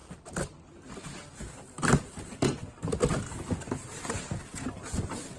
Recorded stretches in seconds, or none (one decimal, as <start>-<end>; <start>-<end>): 0.0-5.4